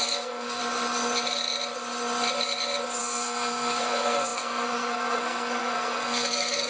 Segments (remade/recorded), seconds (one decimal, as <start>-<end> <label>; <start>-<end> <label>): 0.0-0.6 remade; 0.6-3.0 recorded; 3.0-6.7 remade